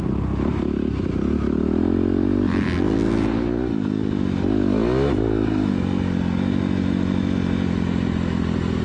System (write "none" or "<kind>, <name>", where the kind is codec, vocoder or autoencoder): none